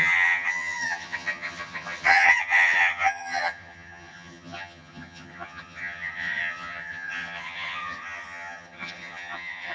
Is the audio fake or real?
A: fake